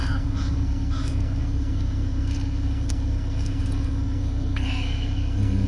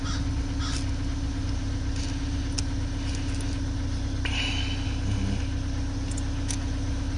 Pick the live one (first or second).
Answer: second